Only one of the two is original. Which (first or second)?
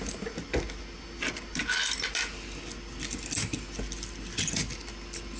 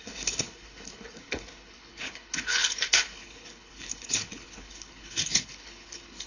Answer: first